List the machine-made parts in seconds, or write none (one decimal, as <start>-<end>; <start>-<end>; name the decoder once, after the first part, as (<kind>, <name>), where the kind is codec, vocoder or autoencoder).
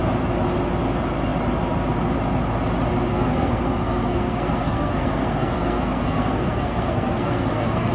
3.1-7.9 (codec, SNAC)